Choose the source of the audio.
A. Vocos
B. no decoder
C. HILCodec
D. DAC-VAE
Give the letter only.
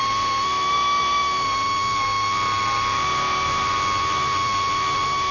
D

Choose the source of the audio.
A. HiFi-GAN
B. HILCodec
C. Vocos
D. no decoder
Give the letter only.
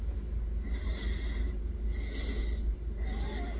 D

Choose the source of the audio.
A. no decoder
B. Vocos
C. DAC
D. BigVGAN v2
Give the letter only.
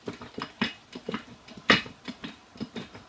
A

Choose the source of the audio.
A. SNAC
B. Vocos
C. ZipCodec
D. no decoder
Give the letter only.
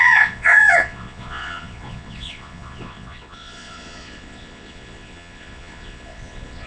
B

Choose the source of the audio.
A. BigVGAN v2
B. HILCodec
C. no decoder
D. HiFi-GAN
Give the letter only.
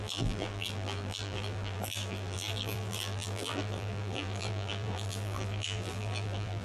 A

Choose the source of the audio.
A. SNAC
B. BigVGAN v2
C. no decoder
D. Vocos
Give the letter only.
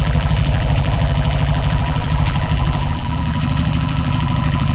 B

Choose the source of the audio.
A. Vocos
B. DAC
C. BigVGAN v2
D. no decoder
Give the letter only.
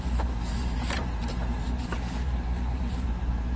C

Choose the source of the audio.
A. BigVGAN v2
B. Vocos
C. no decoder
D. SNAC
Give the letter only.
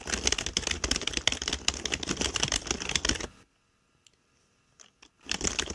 C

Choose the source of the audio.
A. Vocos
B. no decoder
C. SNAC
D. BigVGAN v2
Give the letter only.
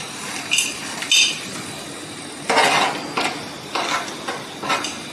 B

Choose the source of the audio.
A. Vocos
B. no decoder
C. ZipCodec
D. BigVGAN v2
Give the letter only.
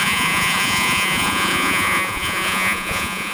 A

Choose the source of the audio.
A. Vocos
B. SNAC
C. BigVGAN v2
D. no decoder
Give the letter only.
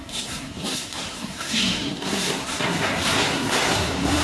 B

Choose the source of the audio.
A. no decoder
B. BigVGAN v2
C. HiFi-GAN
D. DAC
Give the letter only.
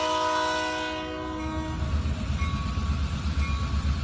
A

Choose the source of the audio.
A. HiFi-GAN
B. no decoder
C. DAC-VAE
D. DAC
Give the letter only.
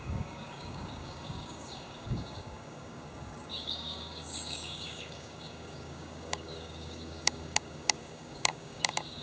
D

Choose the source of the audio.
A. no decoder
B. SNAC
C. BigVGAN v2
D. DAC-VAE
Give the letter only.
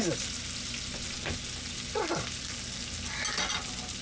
A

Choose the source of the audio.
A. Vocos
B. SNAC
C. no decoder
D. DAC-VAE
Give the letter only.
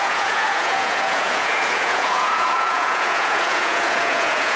A